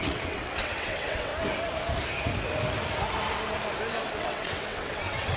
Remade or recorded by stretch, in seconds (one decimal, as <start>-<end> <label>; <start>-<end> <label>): 0.0-1.3 remade; 1.3-4.1 recorded; 4.1-5.4 remade